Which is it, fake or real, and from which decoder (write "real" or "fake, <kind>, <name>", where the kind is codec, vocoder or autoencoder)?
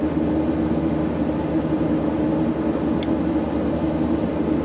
real